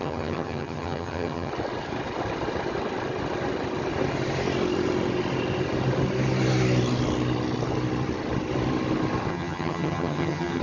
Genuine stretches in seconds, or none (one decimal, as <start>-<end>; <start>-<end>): 1.5-9.3